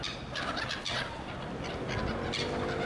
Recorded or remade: recorded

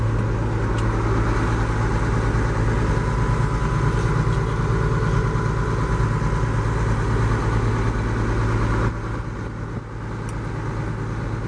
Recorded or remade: recorded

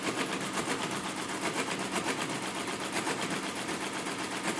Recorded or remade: recorded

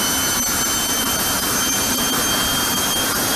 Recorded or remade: recorded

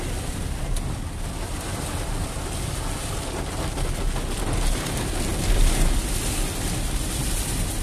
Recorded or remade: recorded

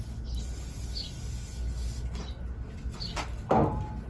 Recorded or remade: recorded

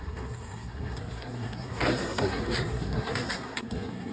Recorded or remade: remade